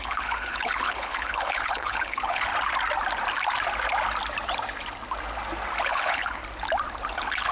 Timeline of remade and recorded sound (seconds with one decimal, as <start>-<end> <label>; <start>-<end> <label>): 0.0-2.5 remade; 2.5-5.8 recorded; 5.8-6.4 remade; 6.4-7.1 recorded; 7.1-7.5 remade